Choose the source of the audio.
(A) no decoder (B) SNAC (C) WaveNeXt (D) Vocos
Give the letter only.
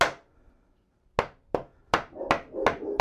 A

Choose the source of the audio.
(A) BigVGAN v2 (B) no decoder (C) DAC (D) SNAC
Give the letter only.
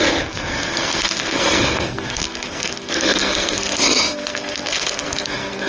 D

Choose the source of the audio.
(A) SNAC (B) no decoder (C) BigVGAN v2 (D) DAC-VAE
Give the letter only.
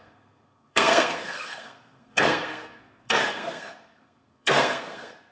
A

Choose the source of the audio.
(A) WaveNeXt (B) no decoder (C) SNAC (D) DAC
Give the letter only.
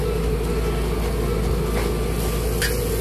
B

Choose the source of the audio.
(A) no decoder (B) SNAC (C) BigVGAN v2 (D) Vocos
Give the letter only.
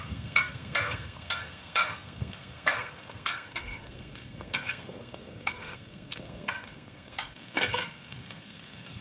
B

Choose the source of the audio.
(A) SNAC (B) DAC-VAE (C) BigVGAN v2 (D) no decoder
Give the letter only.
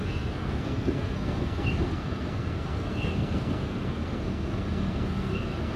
A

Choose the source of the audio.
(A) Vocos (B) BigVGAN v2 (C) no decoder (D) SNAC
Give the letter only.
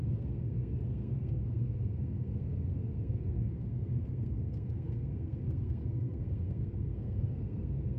D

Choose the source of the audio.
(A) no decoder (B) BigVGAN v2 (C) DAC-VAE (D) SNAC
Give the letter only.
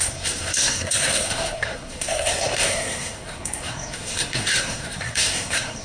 D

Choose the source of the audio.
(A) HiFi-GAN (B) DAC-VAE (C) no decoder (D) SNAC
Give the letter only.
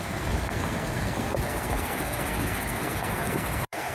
D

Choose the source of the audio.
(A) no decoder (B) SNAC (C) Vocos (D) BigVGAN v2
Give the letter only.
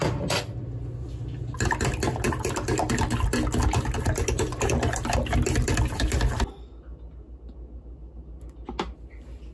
A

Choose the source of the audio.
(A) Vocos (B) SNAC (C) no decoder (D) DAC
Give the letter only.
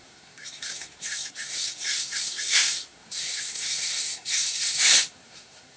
B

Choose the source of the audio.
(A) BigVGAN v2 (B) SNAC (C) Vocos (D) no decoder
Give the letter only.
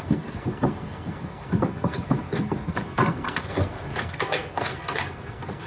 B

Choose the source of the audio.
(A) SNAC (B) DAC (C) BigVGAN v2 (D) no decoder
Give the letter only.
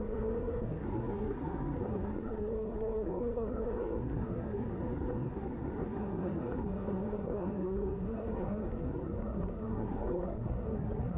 A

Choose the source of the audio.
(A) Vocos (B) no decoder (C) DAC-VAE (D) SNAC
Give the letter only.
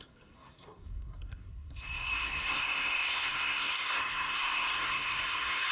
D